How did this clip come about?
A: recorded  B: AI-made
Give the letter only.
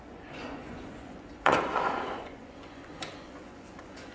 B